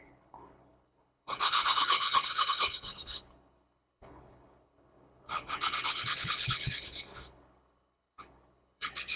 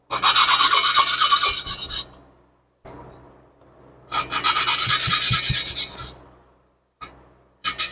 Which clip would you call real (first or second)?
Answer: second